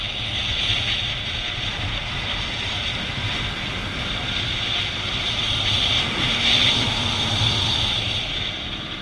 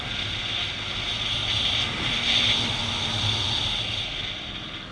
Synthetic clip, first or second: first